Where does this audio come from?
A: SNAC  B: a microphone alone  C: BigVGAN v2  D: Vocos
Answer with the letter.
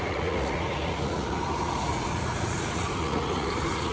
D